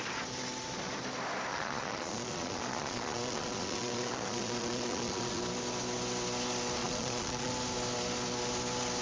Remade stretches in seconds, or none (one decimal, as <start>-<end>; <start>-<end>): 1.5-5.4; 6.8-7.5